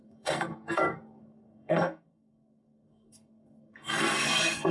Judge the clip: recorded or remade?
remade